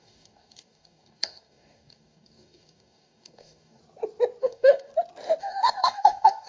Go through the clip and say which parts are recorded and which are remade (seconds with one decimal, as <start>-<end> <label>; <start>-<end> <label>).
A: 0.0-3.8 remade; 3.8-4.4 recorded; 4.4-4.9 remade; 4.9-5.4 recorded; 5.4-6.5 remade